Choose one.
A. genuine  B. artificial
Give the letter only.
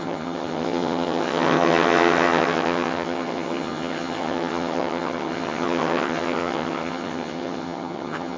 B